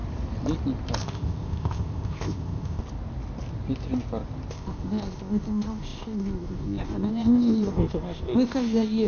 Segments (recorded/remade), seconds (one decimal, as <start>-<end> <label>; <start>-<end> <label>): 0.0-1.0 recorded; 1.0-2.8 remade; 2.8-4.5 recorded; 4.5-9.1 remade